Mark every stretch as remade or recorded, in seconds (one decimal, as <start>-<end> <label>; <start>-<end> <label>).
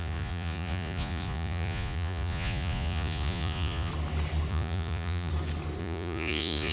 0.0-3.9 remade; 3.9-4.5 recorded; 4.5-5.3 remade; 5.3-5.8 recorded; 5.8-6.7 remade